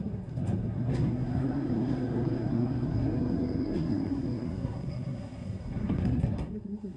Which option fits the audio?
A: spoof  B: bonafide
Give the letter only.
A